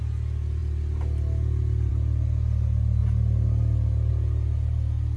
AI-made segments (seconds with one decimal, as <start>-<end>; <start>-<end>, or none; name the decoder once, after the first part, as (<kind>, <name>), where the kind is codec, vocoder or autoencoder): none